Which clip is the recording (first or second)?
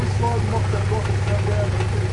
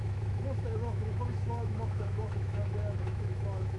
first